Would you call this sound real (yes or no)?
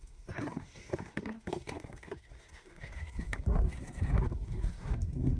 no